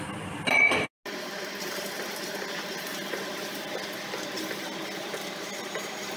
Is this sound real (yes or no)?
yes